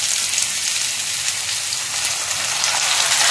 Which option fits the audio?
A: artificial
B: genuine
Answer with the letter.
B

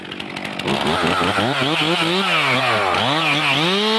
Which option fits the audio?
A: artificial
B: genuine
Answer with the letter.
B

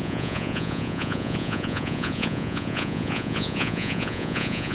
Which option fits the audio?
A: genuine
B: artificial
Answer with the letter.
B